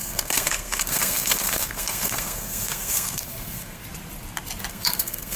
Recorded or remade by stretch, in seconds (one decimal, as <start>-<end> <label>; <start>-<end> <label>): 0.0-3.8 remade; 3.8-4.7 recorded; 4.7-5.4 remade